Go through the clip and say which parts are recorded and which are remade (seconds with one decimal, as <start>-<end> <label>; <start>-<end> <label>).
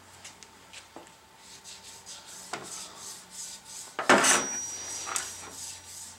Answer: 0.0-6.2 recorded